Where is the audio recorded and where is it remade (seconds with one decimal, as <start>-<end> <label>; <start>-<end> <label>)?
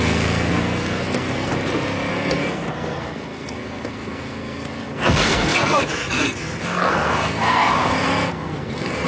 0.0-1.5 remade; 1.5-2.1 recorded; 2.1-9.1 remade